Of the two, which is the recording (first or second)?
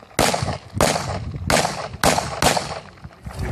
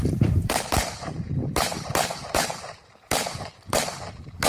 first